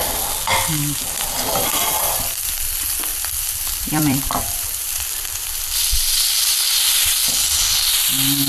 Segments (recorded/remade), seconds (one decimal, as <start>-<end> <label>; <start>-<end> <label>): 0.0-3.1 recorded; 3.1-5.0 remade; 5.0-8.5 recorded